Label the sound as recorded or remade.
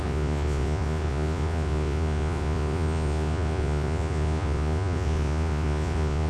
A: remade